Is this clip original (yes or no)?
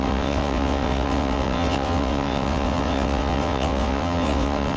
no